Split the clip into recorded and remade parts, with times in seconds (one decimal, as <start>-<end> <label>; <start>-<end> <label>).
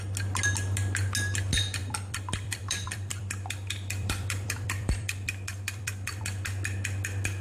0.0-1.8 recorded; 1.8-6.2 remade; 6.2-7.4 recorded